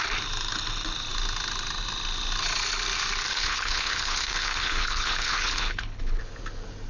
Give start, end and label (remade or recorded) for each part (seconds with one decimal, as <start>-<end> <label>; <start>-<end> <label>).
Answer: 0.0-3.3 recorded; 3.3-6.2 remade; 6.2-6.9 recorded